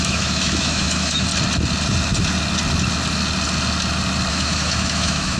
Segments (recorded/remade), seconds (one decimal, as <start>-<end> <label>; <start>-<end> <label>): 0.0-1.3 remade; 1.3-4.3 recorded; 4.3-5.4 remade